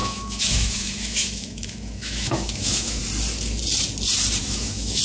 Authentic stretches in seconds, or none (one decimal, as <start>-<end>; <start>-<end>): 3.0-4.4